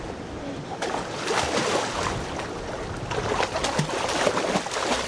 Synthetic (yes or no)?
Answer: no